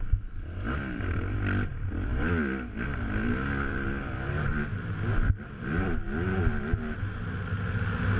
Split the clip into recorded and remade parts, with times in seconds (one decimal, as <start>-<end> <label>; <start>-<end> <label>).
0.0-8.2 recorded